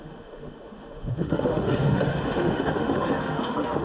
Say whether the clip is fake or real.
fake